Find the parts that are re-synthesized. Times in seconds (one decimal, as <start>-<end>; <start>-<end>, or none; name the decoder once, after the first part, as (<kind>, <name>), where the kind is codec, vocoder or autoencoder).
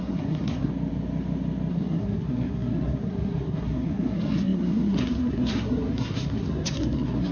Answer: 0.0-0.7 (codec, SNAC); 1.7-7.3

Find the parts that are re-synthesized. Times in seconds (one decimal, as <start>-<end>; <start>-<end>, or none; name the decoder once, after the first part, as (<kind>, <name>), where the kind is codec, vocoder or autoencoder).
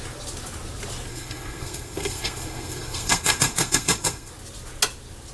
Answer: 1.1-4.3 (codec, SNAC)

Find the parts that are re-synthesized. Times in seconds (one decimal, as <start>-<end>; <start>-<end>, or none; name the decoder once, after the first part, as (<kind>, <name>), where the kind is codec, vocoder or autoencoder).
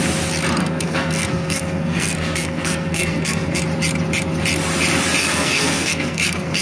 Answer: 0.6-3.6 (codec, SNAC); 5.2-6.6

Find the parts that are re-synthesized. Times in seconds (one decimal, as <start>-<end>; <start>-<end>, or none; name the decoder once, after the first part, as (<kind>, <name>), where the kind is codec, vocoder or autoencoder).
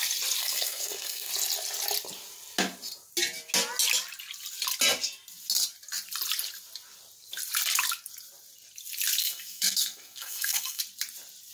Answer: 0.4-1.3 (codec, SNAC); 9.2-10.8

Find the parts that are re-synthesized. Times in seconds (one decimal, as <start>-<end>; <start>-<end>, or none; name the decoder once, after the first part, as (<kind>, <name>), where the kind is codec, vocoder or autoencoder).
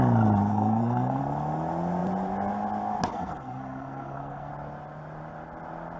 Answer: 0.5-1.2 (codec, SNAC); 3.1-4.5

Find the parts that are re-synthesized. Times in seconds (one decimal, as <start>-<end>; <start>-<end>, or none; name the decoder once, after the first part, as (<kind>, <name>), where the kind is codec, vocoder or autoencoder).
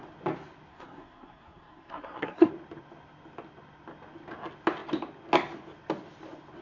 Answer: 0.7-2.5 (codec, SNAC)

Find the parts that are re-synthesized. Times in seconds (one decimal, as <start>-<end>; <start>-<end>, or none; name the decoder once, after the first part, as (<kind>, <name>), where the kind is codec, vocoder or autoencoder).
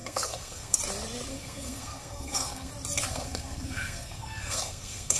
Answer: 0.0-0.8 (codec, SNAC); 1.3-2.7; 3.1-5.2